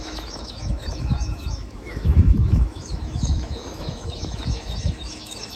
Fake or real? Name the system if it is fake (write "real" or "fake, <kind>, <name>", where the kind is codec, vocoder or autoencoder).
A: fake, autoencoder, DAC-VAE